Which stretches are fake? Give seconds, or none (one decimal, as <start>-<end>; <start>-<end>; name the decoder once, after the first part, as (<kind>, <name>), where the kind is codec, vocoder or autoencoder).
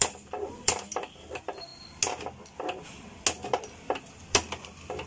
0.0-1.7 (vocoder, BigVGAN v2)